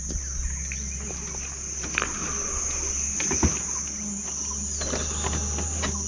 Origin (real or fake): real